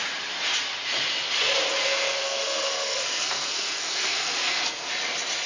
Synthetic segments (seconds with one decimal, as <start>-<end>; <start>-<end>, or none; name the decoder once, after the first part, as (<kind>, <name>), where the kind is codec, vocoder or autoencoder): 1.8-4.9 (codec, SNAC)